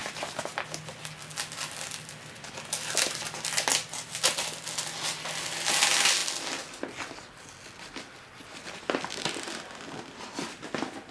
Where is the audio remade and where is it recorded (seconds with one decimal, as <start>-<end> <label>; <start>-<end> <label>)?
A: 0.0-11.1 recorded